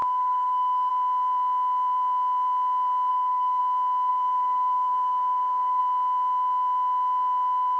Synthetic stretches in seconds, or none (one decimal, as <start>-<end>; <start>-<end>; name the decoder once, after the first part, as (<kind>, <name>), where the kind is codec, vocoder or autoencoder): 0.0-0.9 (codec, DAC); 3.1-3.6; 4.1-5.8